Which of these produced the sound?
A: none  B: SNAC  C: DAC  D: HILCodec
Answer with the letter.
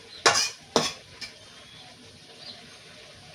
A